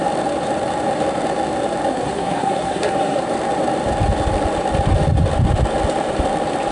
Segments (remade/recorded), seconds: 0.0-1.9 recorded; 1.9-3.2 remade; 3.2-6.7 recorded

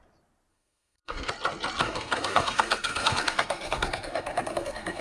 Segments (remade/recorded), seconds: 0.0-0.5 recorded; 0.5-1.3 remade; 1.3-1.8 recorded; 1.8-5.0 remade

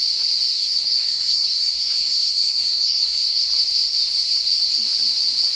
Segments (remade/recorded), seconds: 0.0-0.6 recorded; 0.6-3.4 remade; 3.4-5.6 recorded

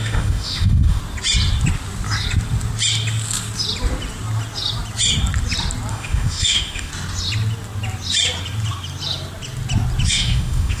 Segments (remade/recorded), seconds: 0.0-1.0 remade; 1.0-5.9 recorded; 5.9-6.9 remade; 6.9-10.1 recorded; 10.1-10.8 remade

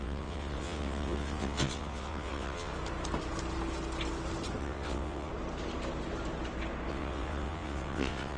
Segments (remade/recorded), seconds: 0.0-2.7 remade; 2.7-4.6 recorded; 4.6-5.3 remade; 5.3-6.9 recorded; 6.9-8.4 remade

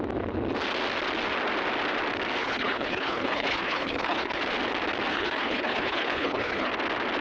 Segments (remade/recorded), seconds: 0.0-2.4 recorded; 2.4-4.4 remade; 4.4-5.1 recorded; 5.1-6.7 remade; 6.7-7.2 recorded